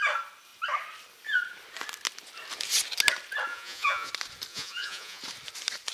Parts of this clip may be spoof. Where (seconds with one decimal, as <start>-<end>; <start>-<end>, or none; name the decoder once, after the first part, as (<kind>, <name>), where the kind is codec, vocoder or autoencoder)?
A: 3.5-4.1 (vocoder, Vocos); 4.5-5.2